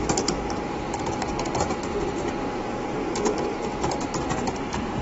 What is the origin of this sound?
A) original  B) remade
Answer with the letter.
A